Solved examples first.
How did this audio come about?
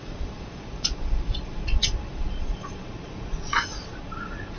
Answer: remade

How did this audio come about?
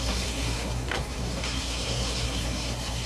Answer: remade